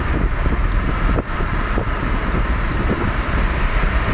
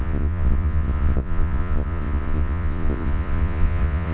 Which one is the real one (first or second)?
first